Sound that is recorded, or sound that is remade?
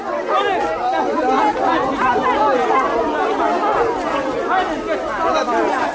recorded